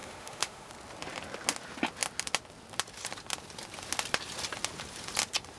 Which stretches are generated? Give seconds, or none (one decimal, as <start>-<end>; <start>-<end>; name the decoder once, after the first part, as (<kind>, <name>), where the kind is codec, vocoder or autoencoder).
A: 0.0-0.7 (autoencoder, DAC-VAE)